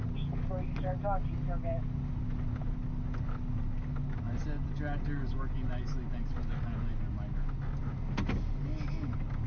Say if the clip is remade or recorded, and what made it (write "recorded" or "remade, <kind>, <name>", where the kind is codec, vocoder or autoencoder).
recorded